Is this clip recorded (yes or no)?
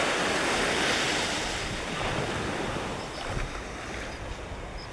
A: yes